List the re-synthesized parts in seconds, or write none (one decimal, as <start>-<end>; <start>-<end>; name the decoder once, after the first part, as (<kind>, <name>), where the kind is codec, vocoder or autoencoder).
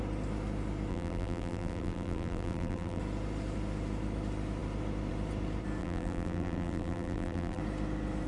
0.9-3.0 (vocoder, BigVGAN v2); 5.8-7.6